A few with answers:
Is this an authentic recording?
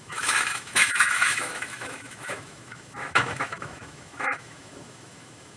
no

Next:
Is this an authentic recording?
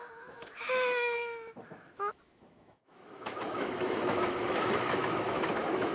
no